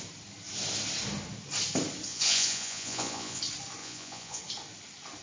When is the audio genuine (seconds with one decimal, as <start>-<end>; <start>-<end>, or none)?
0.0-2.1; 3.4-3.8; 4.4-5.2

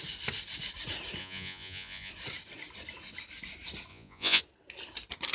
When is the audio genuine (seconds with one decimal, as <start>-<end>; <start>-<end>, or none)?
0.0-1.2; 2.1-3.9; 4.4-5.3

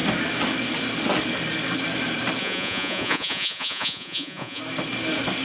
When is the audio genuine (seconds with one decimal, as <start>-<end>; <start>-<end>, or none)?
0.0-2.4; 4.6-5.4

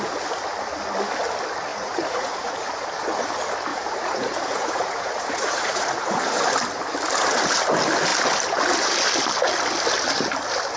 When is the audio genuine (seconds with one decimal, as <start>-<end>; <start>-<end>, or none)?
0.0-1.7; 2.5-3.7; 6.4-10.8

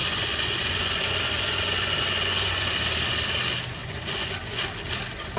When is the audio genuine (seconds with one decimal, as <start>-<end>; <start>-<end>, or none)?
2.7-3.8; 4.6-5.4